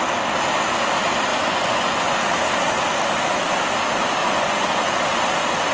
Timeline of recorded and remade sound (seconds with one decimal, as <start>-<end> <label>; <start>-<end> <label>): 0.0-1.3 recorded; 1.3-2.2 remade; 2.2-4.2 recorded; 4.2-4.8 remade; 4.8-5.7 recorded